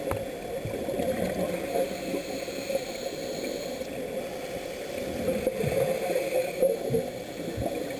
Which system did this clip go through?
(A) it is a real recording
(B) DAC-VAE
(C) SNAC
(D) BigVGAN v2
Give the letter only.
A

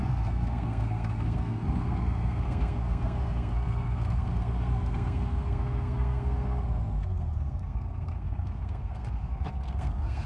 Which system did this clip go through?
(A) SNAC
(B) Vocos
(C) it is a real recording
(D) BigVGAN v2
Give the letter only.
A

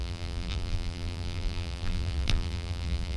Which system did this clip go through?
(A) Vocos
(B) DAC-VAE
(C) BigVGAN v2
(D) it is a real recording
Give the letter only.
C